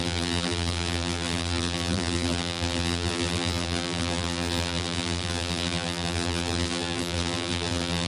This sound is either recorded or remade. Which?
remade